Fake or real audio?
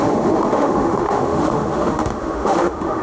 fake